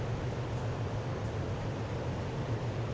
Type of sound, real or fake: real